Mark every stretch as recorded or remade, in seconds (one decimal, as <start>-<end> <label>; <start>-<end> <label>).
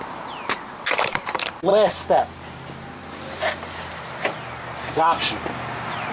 0.0-6.1 recorded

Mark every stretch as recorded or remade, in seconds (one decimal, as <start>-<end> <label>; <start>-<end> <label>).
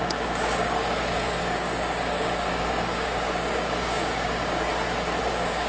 0.0-4.7 remade; 4.7-5.2 recorded; 5.2-5.7 remade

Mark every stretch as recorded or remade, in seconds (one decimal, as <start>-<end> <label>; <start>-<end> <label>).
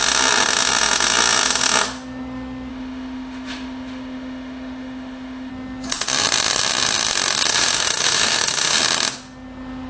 0.0-2.7 recorded; 2.7-5.5 remade; 5.5-7.5 recorded; 7.5-8.8 remade; 8.8-9.9 recorded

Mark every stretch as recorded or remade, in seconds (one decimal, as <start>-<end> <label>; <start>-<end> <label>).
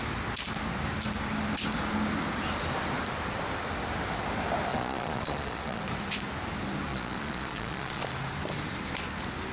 0.0-4.7 recorded; 4.7-5.8 remade; 5.8-6.9 recorded; 6.9-8.0 remade; 8.0-9.5 recorded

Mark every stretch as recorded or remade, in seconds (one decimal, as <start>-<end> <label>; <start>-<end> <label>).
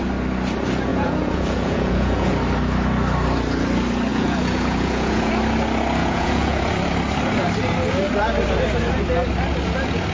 0.0-0.9 recorded; 0.9-2.3 remade; 2.3-4.1 recorded; 4.1-5.3 remade; 5.3-6.0 recorded; 6.0-6.7 remade; 6.7-10.1 recorded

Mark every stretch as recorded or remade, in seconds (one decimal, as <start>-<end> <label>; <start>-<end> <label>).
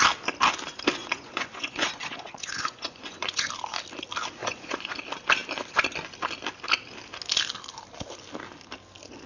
0.0-1.0 recorded; 1.0-3.5 remade; 3.5-4.4 recorded; 4.4-5.0 remade; 5.0-9.3 recorded